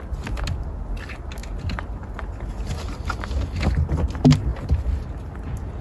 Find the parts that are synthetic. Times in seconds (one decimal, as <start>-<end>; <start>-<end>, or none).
none